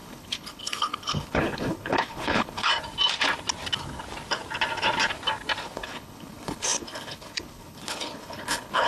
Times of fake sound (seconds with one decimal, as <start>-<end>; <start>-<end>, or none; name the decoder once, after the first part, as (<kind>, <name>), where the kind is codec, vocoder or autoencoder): 0.0-2.7 (codec, HILCodec); 5.6-8.9